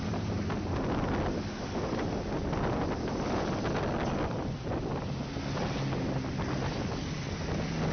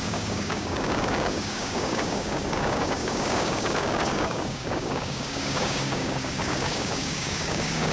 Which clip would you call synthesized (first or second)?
second